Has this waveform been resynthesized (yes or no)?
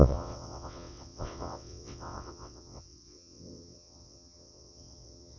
yes